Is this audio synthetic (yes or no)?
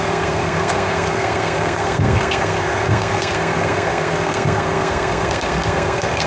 yes